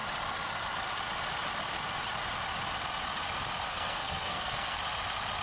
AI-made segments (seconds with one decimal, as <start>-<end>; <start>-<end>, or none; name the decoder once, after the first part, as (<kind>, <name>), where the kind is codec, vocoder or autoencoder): 3.7-4.8 (codec, SNAC)